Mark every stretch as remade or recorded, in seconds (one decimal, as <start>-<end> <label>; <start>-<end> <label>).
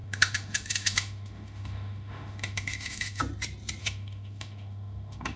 0.0-3.2 remade; 3.2-3.8 recorded; 3.8-5.4 remade